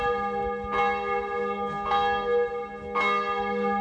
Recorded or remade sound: recorded